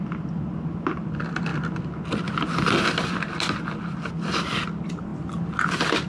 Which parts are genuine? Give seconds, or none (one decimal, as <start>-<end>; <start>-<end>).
0.0-6.1